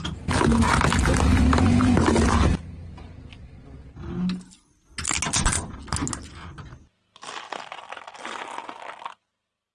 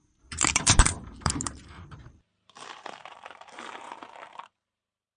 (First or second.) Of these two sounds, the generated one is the second